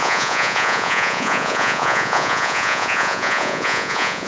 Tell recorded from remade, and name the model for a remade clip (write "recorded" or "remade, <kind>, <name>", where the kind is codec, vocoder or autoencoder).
remade, vocoder, Vocos